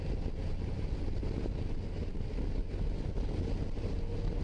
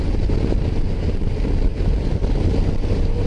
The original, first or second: first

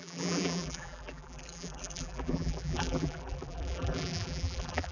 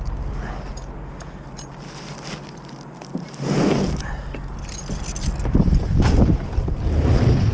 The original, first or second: second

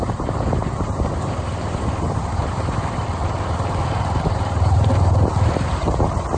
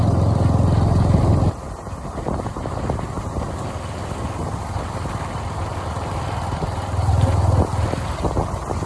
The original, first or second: second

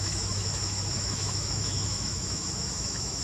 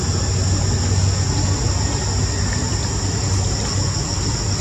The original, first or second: second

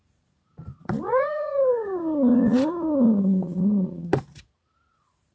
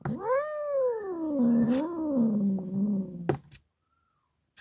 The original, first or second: second